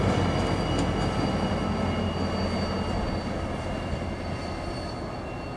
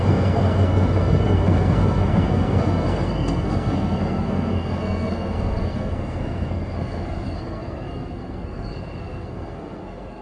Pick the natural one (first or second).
first